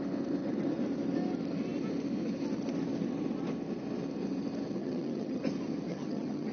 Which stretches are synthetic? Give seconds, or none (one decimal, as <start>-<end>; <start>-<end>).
4.8-5.4; 5.9-6.5